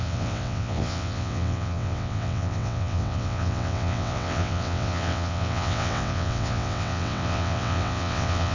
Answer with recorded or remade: remade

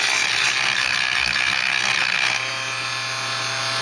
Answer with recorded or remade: recorded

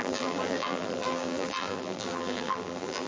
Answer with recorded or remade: remade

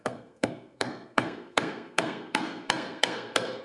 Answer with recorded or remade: remade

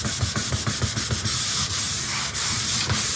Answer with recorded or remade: recorded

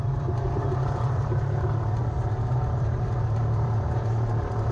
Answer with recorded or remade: remade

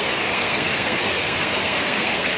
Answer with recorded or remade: remade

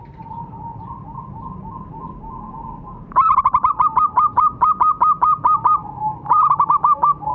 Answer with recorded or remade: remade